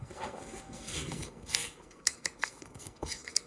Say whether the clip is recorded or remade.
remade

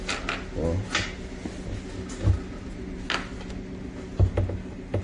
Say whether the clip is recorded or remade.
recorded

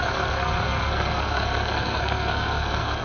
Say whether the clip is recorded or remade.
remade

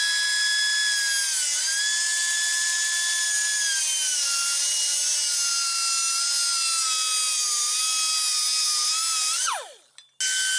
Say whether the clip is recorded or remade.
recorded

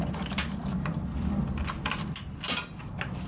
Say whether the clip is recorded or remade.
recorded